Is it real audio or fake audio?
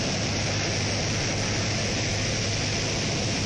real